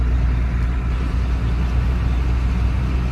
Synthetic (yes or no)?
no